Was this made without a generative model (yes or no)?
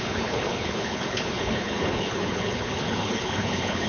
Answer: no